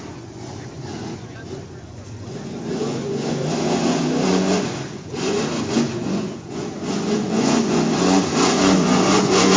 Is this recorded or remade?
remade